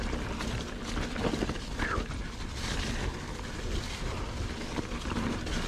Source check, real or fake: real